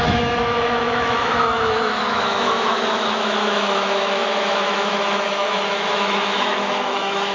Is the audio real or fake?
fake